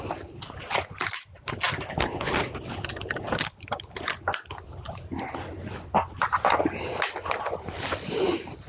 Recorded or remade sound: recorded